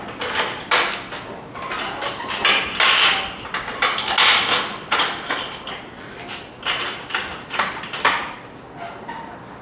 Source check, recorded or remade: recorded